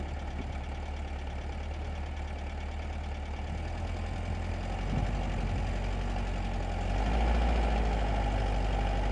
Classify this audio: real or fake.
real